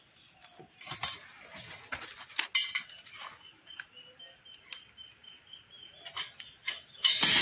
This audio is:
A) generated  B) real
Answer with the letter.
B